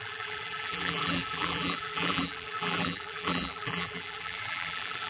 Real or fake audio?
fake